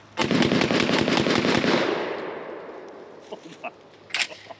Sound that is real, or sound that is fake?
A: real